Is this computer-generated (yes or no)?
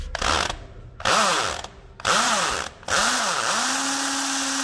no